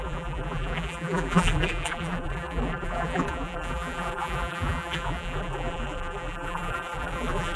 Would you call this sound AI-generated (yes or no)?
yes